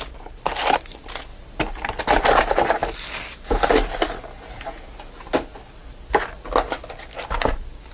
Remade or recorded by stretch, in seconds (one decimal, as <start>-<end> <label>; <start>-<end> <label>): 0.0-7.9 recorded